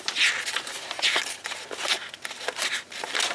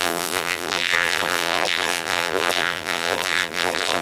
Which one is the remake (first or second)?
second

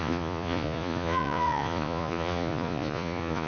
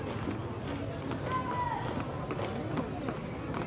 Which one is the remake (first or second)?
first